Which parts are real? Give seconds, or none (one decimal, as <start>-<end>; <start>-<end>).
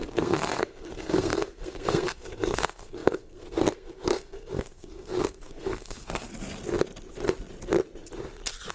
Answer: 6.3-8.7